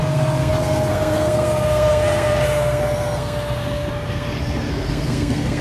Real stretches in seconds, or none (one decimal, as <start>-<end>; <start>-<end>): none